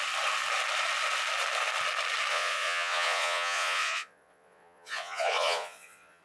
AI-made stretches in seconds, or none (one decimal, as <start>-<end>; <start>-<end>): 2.3-6.2